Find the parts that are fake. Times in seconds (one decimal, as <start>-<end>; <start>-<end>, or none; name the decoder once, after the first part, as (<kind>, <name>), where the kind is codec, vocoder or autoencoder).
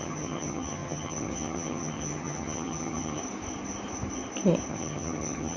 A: 0.0-3.2 (vocoder, HiFi-GAN); 4.7-5.6